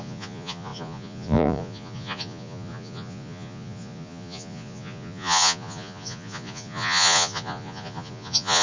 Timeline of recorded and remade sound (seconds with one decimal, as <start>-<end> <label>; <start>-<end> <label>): 0.0-8.6 remade

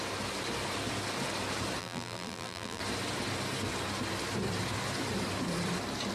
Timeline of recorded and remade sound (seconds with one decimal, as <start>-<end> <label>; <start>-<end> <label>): 0.0-1.8 recorded; 1.8-2.8 remade; 2.8-6.1 recorded

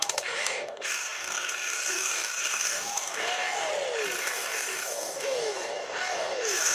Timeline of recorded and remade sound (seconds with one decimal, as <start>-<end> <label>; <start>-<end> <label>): 0.0-3.7 remade; 3.7-4.2 recorded; 4.2-6.7 remade

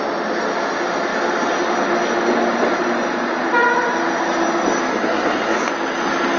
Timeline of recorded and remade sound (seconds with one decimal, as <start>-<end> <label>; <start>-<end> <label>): 0.0-4.9 recorded; 4.9-5.7 remade; 5.7-6.4 recorded

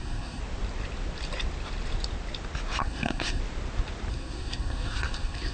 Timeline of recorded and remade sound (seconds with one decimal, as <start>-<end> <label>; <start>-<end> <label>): 0.0-0.4 remade; 0.4-2.8 recorded; 2.8-3.4 remade; 3.4-4.1 recorded; 4.1-5.5 remade

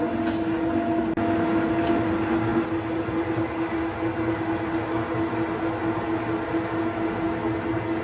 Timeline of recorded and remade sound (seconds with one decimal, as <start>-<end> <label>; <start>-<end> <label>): 0.0-2.5 recorded; 2.5-5.3 remade; 5.3-8.0 recorded

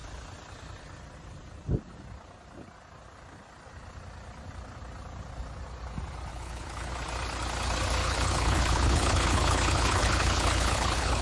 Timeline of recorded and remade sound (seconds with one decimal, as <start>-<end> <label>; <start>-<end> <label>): 0.0-6.3 recorded; 6.3-6.9 remade; 6.9-8.0 recorded; 8.0-11.2 remade

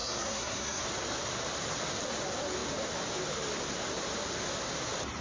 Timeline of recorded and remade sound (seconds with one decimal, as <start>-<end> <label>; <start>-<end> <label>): 0.0-0.8 remade; 0.8-5.2 recorded